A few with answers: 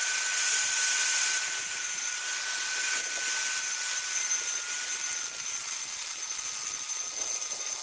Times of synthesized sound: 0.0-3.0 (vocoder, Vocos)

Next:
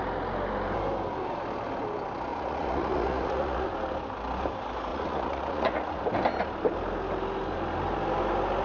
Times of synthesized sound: 2.3-3.7 (vocoder, Vocos); 4.9-6.0

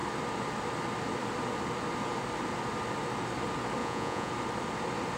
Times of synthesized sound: 3.8-4.3 (vocoder, Vocos)

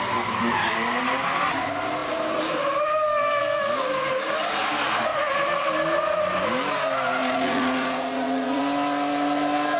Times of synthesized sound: 7.2-8.6 (vocoder, Vocos)

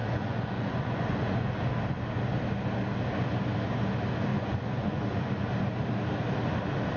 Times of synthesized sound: 0.0-1.6 (vocoder, Vocos); 4.3-5.3

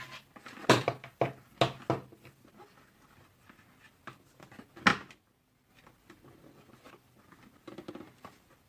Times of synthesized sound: none

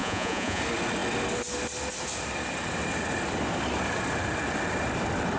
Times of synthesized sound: 0.0-0.6 (vocoder, Vocos)

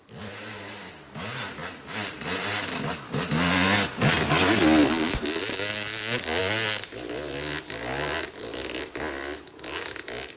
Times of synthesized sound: none